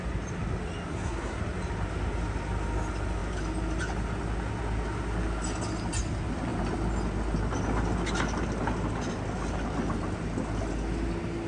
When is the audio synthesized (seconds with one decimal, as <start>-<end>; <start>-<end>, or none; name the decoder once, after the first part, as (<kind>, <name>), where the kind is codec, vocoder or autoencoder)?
0.9-1.4 (codec, SNAC)